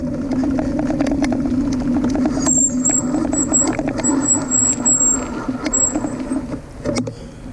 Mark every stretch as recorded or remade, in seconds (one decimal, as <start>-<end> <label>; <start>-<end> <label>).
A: 0.0-7.5 recorded